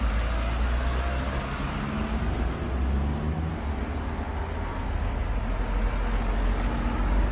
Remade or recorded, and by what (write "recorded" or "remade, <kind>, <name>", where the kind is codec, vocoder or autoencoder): recorded